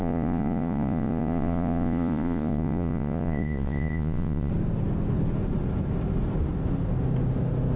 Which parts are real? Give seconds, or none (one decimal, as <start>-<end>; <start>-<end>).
4.5-7.8